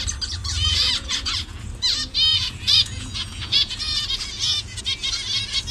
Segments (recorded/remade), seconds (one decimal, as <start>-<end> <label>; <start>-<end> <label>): 0.0-0.4 recorded; 0.4-1.6 remade; 1.6-2.3 recorded; 2.3-4.8 remade; 4.8-5.7 recorded